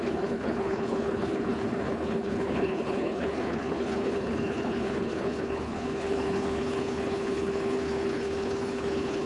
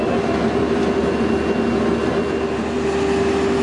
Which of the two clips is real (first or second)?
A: second